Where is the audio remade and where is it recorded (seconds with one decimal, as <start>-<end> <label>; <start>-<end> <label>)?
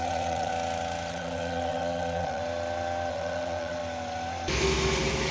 0.0-0.5 remade; 0.5-1.1 recorded; 1.1-2.4 remade; 2.4-3.1 recorded; 3.1-3.8 remade; 3.8-5.3 recorded